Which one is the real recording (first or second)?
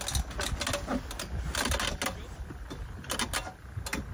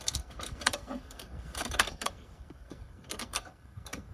first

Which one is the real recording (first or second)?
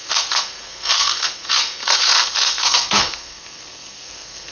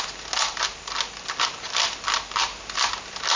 second